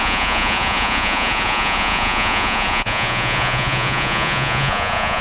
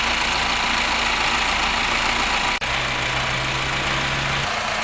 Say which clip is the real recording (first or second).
second